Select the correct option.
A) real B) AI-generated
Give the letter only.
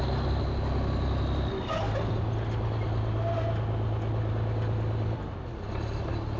A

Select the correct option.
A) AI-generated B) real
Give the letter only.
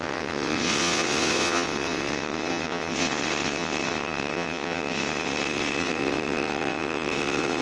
A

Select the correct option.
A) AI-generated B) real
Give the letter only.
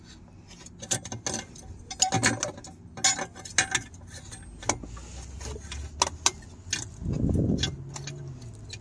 B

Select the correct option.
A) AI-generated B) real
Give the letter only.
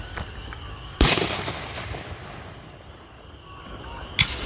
B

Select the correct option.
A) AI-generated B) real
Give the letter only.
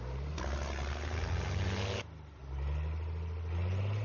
B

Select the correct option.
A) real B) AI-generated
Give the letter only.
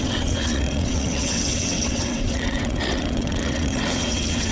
B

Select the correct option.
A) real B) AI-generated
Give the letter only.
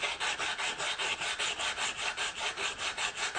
A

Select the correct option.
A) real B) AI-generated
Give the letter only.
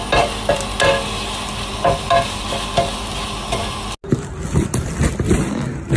A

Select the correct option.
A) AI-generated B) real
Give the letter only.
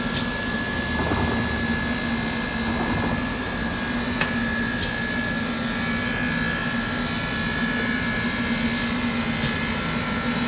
B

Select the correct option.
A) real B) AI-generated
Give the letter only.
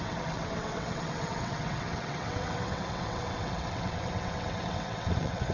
B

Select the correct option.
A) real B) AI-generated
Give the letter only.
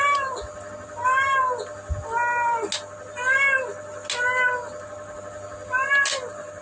A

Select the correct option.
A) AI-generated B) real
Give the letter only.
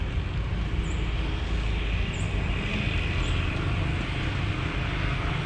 B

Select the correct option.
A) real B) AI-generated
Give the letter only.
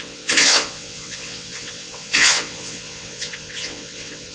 B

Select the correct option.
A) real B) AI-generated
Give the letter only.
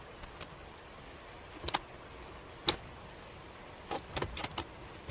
A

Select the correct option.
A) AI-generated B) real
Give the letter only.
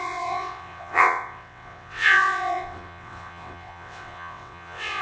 A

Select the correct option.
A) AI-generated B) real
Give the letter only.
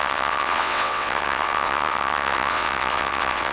A